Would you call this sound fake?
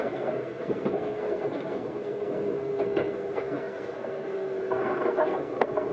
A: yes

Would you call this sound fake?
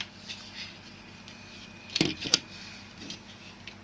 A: no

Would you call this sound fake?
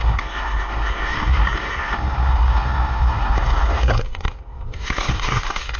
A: yes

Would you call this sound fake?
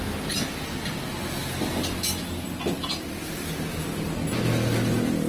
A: no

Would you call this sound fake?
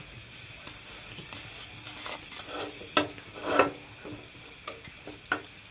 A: no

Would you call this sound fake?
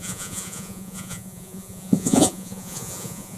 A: yes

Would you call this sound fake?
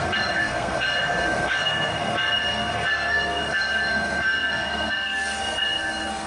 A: yes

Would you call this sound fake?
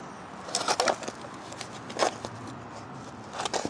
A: no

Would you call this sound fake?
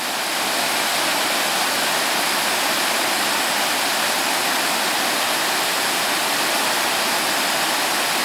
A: no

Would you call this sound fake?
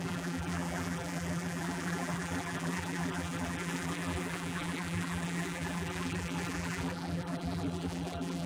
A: yes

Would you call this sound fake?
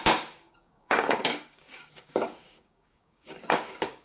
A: yes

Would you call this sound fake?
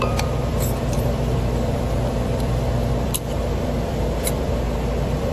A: yes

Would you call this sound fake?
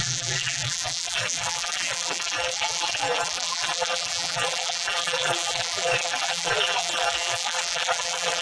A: yes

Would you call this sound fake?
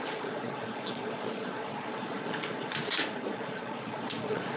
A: yes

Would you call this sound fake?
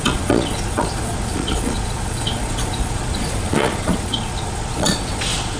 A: yes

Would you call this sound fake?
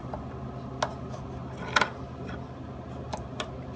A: no